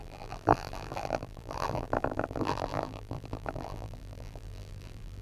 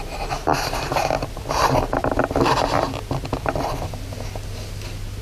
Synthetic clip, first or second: first